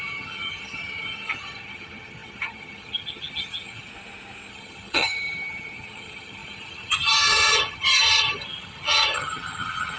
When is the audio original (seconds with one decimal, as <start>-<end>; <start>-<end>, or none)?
3.9-4.5